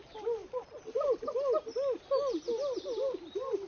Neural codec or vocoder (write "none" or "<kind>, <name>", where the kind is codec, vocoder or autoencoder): none